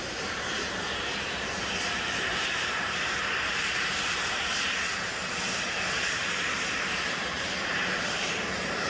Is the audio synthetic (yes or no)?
yes